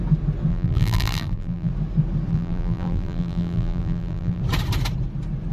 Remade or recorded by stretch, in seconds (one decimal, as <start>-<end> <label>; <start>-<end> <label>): 0.0-0.5 recorded; 0.5-1.7 remade; 1.7-2.3 recorded; 2.3-4.4 remade; 4.4-5.5 recorded